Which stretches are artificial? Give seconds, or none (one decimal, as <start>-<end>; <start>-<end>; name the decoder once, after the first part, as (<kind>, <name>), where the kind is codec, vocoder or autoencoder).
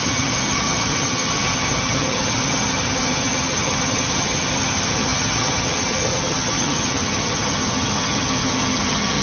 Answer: 0.0-9.2 (vocoder, HiFi-GAN)